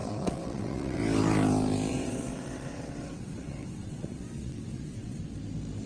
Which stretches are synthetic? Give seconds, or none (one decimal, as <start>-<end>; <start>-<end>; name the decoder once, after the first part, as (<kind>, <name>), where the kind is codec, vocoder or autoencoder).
0.0-1.0 (vocoder, WaveNeXt); 1.9-5.2